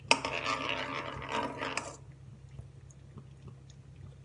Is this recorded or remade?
recorded